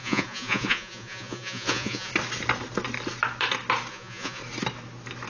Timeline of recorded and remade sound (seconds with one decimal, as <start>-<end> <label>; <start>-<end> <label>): 0.0-2.1 remade; 2.1-3.9 recorded; 3.9-4.4 remade; 4.4-5.3 recorded